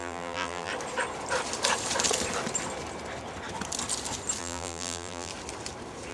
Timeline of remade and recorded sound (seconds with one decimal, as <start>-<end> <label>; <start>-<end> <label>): 0.0-0.7 remade; 0.7-4.4 recorded; 4.4-5.3 remade; 5.3-6.1 recorded